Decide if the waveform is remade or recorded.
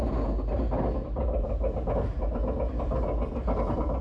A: recorded